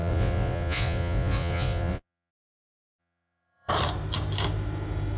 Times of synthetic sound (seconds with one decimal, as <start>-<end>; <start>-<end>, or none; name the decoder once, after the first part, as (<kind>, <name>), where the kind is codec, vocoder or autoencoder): 0.0-2.3 (vocoder, Vocos); 3.0-3.7

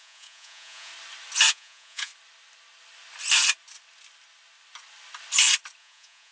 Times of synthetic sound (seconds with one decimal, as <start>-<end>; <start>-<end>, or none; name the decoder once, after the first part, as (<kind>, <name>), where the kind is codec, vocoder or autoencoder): 0.0-0.9 (vocoder, Vocos); 1.5-2.1; 5.8-6.3

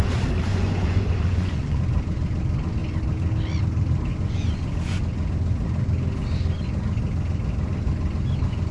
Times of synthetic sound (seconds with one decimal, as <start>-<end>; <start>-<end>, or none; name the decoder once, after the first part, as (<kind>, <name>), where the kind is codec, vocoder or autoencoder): 0.5-1.8 (vocoder, Vocos); 4.1-5.0

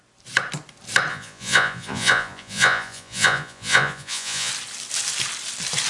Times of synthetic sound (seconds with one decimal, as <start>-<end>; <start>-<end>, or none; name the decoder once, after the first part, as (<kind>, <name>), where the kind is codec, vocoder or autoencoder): 1.1-4.5 (vocoder, Vocos)

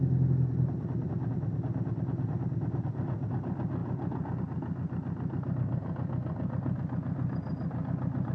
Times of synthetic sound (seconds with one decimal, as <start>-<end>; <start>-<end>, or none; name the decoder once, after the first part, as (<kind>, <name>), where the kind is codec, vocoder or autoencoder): none